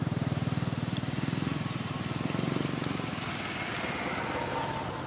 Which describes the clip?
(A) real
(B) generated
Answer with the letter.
A